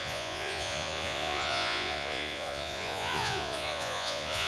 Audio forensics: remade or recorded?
remade